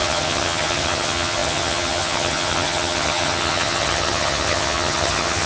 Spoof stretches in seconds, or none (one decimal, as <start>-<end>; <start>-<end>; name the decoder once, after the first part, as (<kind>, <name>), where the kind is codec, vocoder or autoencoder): 0.0-5.5 (vocoder, HiFi-GAN)